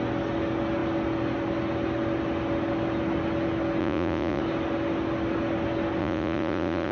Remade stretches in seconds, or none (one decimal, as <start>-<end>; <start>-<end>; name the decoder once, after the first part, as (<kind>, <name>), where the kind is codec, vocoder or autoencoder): 3.8-4.4 (vocoder, Vocos); 6.0-6.9